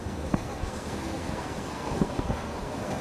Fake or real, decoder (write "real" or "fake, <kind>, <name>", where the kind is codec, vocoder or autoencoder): fake, codec, SNAC